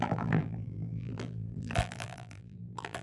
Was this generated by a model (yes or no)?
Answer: yes